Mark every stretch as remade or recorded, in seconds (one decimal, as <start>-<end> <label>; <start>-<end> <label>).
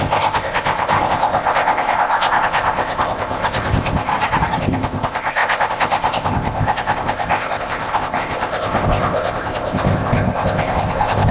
0.0-4.1 remade; 4.1-4.6 recorded; 4.6-11.3 remade